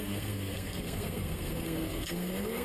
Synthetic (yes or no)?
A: yes